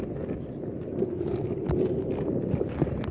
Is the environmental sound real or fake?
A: real